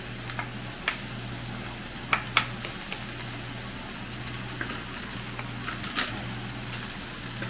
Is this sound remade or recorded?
recorded